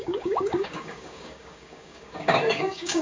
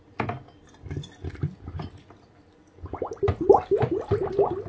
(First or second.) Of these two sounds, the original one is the second